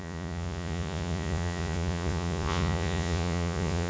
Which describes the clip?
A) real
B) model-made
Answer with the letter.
B